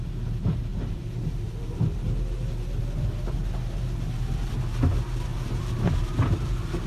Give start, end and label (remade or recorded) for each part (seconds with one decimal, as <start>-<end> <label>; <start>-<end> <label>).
0.0-0.7 recorded; 0.7-2.5 remade; 2.5-3.8 recorded; 3.8-4.6 remade; 4.6-5.3 recorded; 5.3-6.2 remade; 6.2-6.9 recorded